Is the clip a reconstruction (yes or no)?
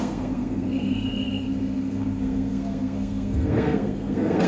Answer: yes